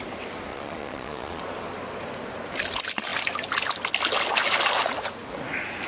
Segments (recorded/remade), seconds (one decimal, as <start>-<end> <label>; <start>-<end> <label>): 0.0-0.5 recorded; 0.5-1.4 remade; 1.4-5.9 recorded